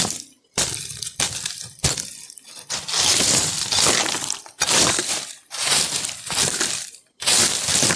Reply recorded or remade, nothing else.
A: remade